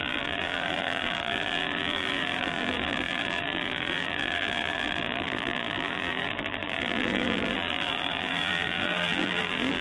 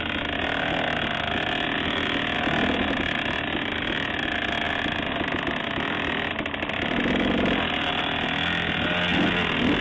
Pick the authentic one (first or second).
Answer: second